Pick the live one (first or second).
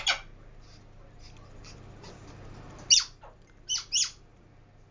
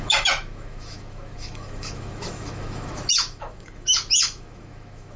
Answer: first